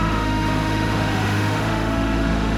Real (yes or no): no